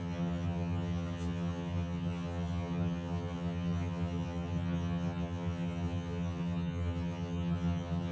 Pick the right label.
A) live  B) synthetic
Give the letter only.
B